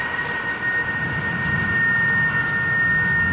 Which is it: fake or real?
real